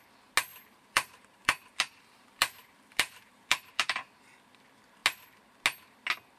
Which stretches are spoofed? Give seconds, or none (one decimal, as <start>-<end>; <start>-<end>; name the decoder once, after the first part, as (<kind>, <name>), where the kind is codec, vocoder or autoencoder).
0.5-4.1 (vocoder, BigVGAN v2)